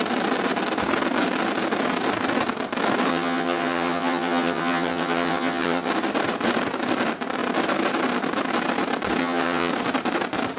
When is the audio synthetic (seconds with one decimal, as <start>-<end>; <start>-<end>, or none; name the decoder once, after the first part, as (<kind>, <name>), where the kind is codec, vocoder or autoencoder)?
3.1-5.9 (vocoder, HiFi-GAN); 9.2-9.7